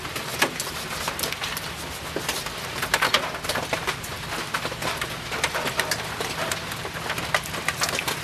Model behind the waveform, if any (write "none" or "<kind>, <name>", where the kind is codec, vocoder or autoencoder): none